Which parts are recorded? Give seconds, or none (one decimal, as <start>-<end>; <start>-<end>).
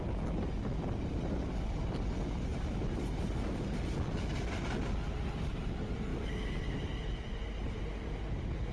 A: 0.0-8.7